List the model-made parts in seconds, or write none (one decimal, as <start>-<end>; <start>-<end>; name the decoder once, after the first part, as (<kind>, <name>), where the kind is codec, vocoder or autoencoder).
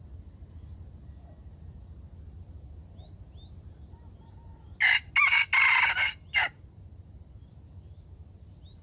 0.0-0.7 (vocoder, BigVGAN v2); 5.7-8.8